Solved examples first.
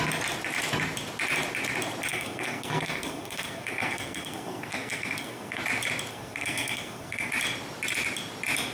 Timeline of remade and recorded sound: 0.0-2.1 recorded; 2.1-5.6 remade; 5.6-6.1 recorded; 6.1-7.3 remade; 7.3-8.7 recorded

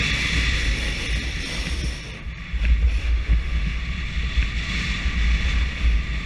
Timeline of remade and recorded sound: 0.0-3.0 recorded; 3.0-3.8 remade; 3.8-6.3 recorded